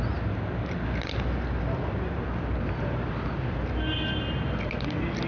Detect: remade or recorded recorded